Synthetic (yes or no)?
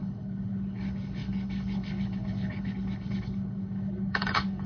yes